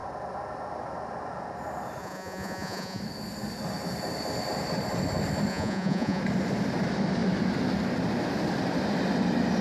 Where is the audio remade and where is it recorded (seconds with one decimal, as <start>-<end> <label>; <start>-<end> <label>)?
0.0-2.0 recorded; 2.0-3.0 remade; 3.0-5.5 recorded; 5.5-6.2 remade; 6.2-9.6 recorded

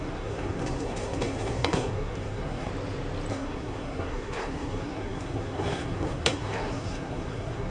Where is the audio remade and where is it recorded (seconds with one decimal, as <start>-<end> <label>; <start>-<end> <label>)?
0.0-2.7 remade; 2.7-3.3 recorded; 3.3-7.7 remade

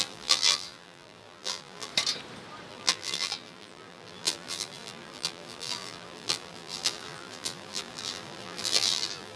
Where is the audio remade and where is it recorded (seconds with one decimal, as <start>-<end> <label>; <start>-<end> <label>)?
0.0-1.9 remade; 1.9-2.7 recorded; 2.7-9.4 remade